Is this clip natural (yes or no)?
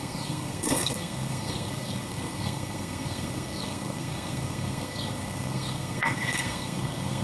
no